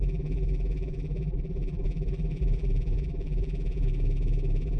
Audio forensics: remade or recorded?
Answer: remade